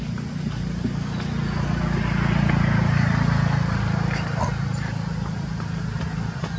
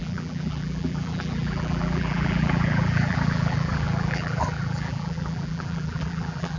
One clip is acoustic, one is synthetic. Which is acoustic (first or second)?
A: first